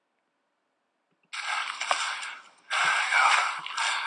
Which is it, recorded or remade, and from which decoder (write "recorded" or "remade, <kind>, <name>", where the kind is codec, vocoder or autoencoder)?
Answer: recorded